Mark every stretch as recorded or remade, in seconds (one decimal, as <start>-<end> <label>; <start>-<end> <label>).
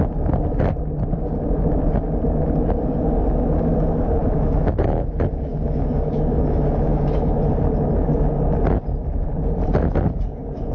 0.0-4.2 recorded; 4.2-5.1 remade; 5.1-5.5 recorded; 5.5-7.3 remade; 7.3-10.7 recorded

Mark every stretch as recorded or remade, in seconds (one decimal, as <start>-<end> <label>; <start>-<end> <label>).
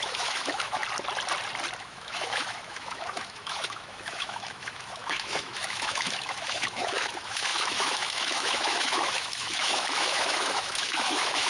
0.0-0.8 remade; 0.8-1.8 recorded; 1.8-11.5 remade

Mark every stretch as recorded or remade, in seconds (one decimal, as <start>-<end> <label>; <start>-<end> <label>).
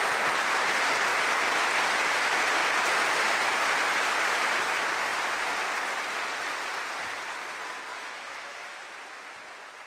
0.0-7.9 recorded; 7.9-8.9 remade; 8.9-9.9 recorded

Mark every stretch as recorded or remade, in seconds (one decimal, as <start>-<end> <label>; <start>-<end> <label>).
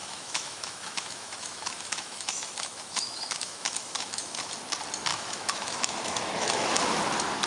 0.0-4.5 remade; 4.5-5.1 recorded; 5.1-6.7 remade; 6.7-7.5 recorded